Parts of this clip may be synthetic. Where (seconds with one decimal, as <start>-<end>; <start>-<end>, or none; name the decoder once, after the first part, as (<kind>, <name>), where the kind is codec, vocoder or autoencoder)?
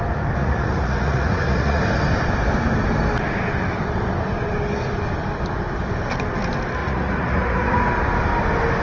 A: 0.4-1.8 (vocoder, Vocos); 6.8-7.8